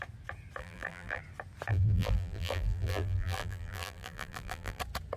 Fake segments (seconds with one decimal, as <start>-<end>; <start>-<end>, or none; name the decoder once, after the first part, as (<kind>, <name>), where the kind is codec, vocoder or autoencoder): 0.6-1.2 (vocoder, BigVGAN v2); 1.7-4.8